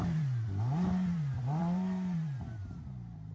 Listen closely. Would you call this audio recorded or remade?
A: remade